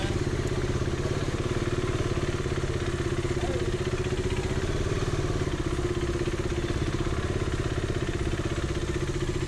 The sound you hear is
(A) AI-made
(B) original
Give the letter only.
B